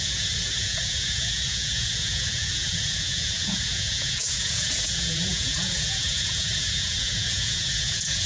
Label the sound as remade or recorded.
remade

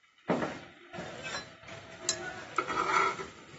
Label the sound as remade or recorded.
recorded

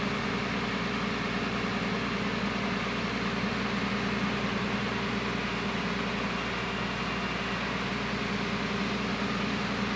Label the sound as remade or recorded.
recorded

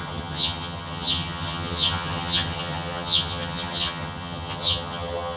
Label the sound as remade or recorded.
remade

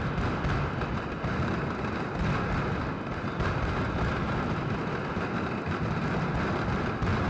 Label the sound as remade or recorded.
recorded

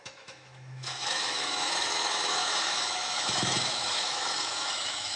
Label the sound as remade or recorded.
remade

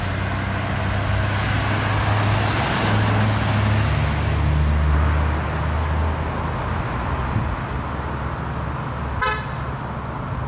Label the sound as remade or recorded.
recorded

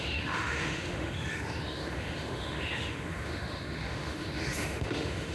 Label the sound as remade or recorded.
remade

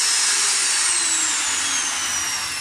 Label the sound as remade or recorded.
recorded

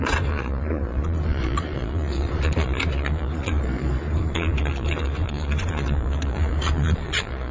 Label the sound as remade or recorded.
remade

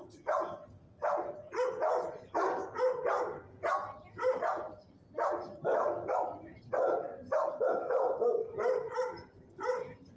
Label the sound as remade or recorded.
recorded